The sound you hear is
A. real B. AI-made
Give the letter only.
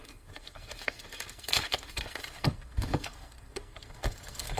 B